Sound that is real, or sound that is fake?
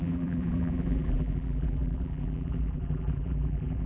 fake